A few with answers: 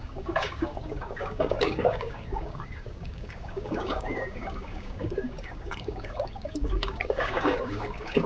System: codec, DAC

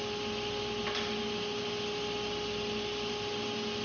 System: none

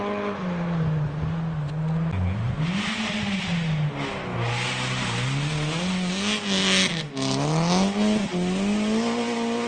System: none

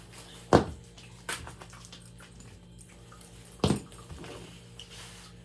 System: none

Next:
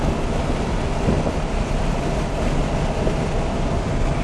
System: none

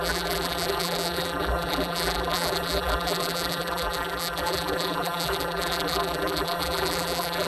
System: vocoder, BigVGAN v2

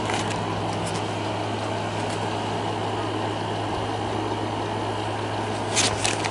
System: none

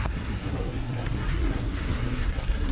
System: codec, SNAC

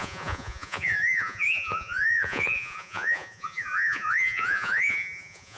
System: vocoder, Vocos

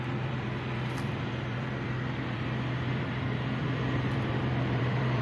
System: vocoder, BigVGAN v2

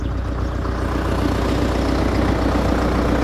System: none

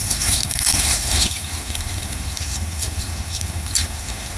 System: codec, SNAC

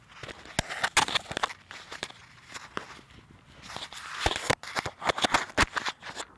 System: none